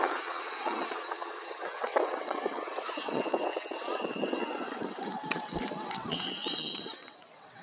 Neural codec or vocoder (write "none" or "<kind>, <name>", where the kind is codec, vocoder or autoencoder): vocoder, WaveNeXt